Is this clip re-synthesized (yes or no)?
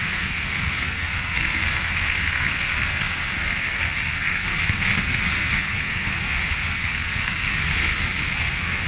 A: yes